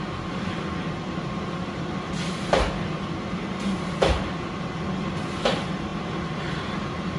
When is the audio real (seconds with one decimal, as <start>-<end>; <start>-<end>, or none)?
0.0-7.2